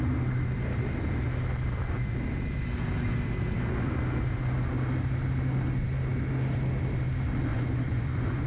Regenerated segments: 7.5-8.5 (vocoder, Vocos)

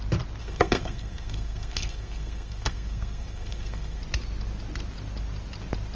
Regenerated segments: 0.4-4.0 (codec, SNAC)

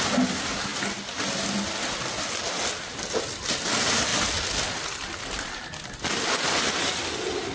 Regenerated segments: none

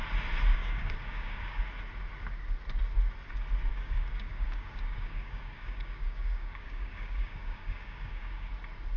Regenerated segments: 0.5-1.6 (codec, DAC); 3.7-8.5

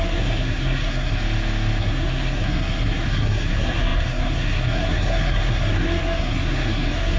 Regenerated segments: 0.0-1.2 (codec, SNAC); 1.8-7.2

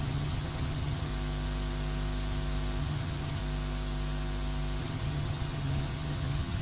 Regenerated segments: 0.0-1.1 (vocoder, HiFi-GAN); 2.8-3.4; 4.8-6.6